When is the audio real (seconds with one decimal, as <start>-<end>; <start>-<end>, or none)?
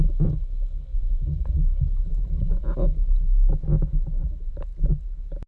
0.0-0.9; 2.6-5.5